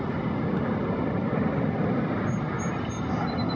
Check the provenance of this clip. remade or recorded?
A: recorded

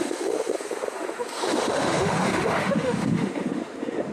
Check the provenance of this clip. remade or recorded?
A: remade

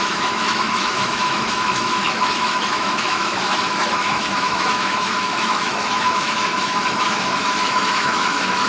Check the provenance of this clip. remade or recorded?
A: remade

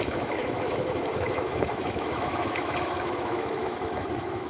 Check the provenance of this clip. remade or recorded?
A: remade